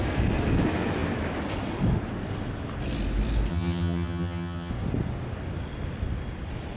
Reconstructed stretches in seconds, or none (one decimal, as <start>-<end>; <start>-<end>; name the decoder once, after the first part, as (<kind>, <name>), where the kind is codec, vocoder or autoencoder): 3.5-4.7 (vocoder, HiFi-GAN)